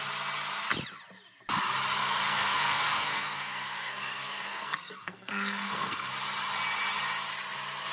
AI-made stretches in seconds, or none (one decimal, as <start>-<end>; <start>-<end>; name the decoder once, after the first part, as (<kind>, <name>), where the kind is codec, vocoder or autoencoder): 2.0-6.1 (codec, SNAC)